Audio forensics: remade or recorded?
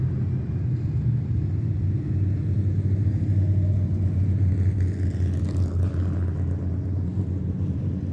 recorded